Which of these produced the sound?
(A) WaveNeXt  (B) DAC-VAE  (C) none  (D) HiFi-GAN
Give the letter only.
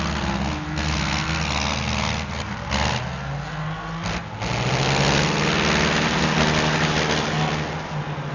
C